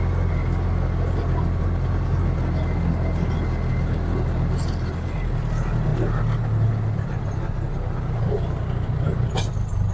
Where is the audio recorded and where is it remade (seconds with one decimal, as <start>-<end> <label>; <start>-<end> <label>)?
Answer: 0.0-9.9 recorded